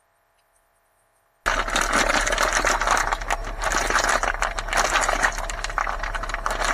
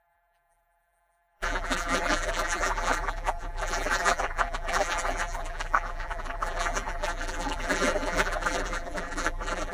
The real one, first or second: first